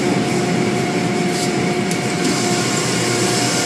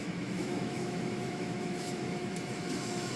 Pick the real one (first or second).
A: first